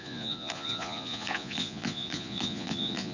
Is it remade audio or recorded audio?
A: remade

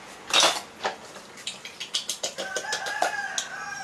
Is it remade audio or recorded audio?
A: recorded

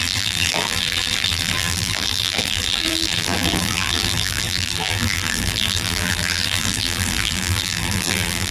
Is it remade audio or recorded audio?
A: remade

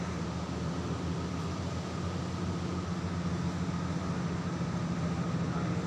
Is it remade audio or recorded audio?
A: recorded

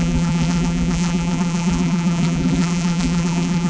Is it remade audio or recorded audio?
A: remade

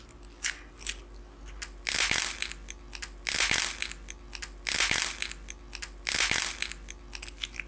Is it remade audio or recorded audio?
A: recorded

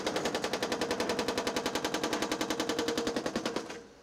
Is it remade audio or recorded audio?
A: recorded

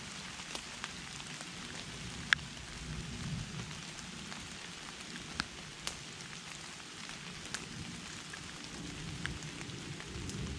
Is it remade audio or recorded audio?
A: recorded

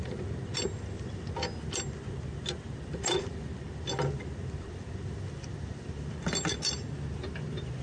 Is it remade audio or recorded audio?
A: recorded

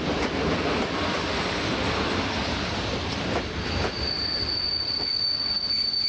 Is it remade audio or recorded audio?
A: recorded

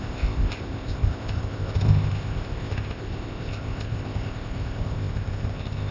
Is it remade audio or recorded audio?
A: remade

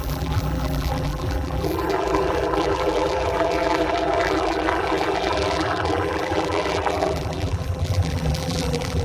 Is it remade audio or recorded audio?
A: remade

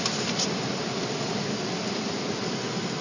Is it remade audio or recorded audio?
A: recorded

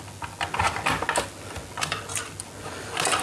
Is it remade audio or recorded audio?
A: recorded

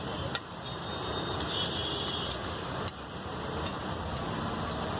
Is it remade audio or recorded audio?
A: recorded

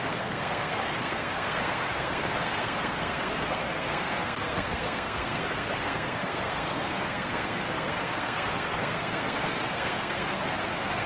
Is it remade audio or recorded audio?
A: remade